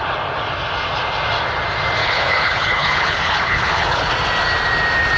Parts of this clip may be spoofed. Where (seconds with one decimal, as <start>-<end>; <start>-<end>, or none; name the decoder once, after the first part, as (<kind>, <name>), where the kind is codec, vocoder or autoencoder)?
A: 2.0-4.1 (codec, HILCodec)